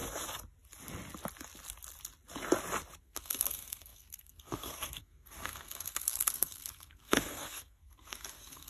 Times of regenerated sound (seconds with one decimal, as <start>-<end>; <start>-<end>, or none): 3.0-8.7